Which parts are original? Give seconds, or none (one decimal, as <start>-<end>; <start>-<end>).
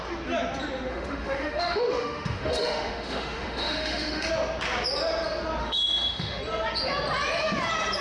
0.0-0.9; 4.3-5.6; 6.4-8.0